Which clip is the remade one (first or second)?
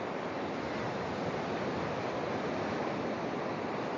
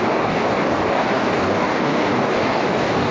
second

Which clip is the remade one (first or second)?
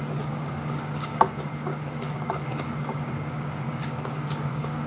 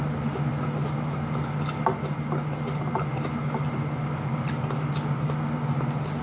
first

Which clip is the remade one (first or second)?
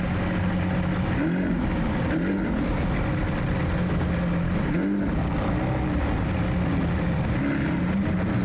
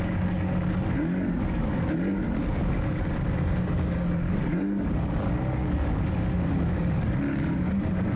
second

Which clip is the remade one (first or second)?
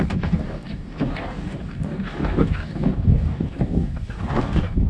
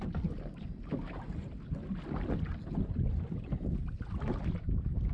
first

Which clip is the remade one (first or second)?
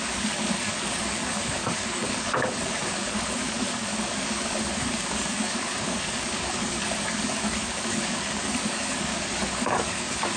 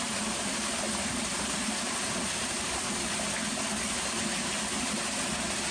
first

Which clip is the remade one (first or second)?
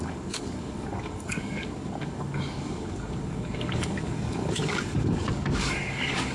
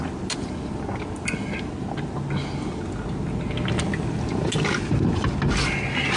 first